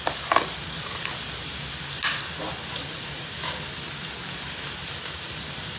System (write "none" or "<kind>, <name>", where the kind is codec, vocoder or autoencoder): none